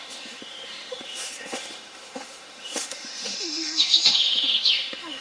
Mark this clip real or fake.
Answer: fake